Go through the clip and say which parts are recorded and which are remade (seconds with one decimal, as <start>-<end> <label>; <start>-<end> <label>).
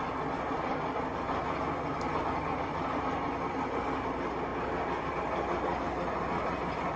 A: 0.0-7.0 recorded